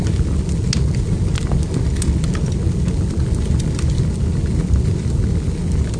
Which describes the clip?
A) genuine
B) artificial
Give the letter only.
A